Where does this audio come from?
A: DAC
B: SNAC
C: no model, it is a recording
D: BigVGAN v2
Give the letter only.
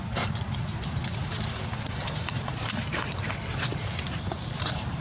D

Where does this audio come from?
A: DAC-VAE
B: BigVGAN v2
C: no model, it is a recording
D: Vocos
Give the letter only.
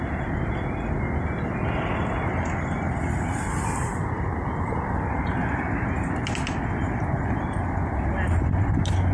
C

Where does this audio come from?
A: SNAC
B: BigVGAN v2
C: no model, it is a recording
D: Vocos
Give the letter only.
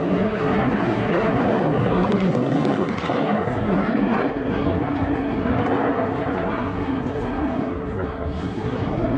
A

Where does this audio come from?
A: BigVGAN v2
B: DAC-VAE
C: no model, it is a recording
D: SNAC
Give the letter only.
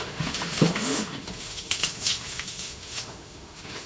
B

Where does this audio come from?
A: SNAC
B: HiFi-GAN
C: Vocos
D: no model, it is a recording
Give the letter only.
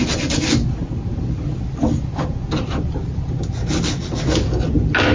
D